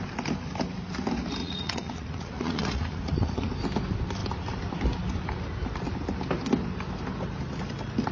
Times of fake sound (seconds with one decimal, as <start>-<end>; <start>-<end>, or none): 1.4-3.5